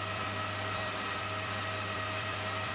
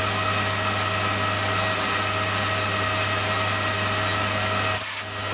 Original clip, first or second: second